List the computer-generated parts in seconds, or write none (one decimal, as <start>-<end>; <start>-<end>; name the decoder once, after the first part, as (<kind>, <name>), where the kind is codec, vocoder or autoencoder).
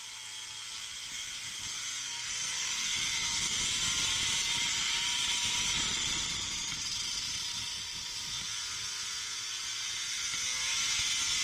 2.0-3.6 (codec, SNAC)